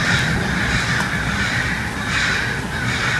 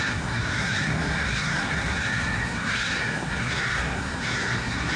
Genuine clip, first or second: first